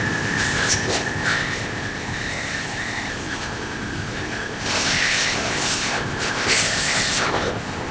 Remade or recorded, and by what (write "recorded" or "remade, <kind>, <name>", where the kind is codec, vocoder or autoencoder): remade, codec, ZipCodec